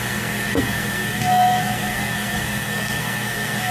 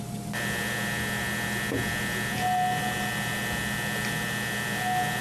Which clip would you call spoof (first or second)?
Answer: first